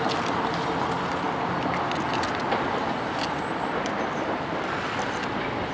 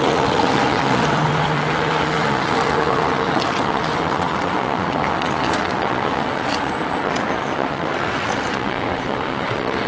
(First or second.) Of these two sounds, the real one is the first